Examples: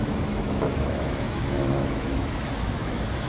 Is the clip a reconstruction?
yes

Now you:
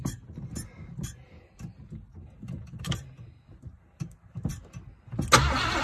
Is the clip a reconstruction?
no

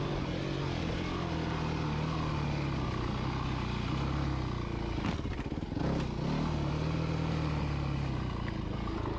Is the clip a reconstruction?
no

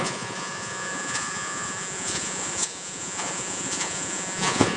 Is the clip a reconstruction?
yes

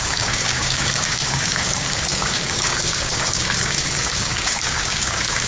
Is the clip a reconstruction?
yes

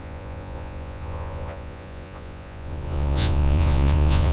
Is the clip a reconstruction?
yes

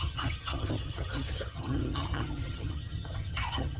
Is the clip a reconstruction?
yes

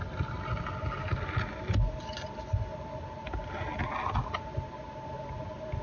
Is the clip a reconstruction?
no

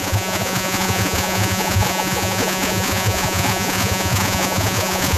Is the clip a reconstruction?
yes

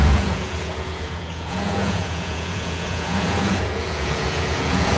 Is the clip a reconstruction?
yes